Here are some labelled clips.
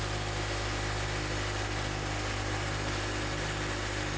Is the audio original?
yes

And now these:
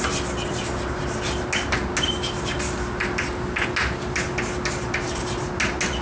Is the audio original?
yes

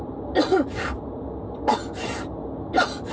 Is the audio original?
yes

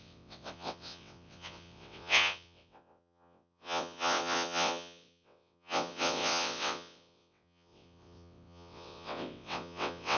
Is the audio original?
no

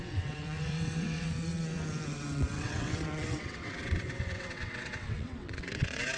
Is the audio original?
no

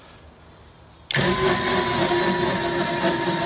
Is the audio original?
yes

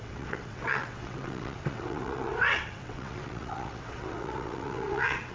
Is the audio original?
no